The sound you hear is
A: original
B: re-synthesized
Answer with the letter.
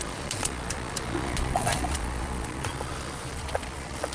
B